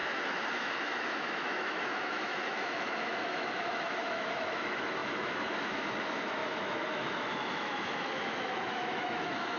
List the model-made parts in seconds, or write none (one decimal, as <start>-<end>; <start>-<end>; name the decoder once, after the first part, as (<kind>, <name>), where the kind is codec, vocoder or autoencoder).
0.0-9.6 (autoencoder, DAC-VAE)